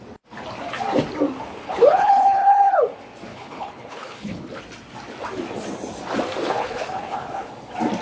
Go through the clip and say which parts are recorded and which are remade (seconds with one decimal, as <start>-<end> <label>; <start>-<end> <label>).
0.0-1.5 recorded; 1.5-2.8 remade; 2.8-3.3 recorded; 3.3-4.5 remade; 4.5-6.4 recorded; 6.4-7.5 remade; 7.5-8.0 recorded